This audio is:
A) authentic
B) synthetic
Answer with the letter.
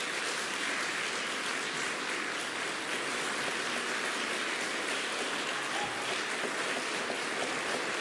A